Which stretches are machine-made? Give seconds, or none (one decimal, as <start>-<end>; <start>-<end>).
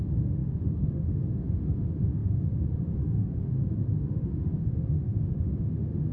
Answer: 0.0-6.1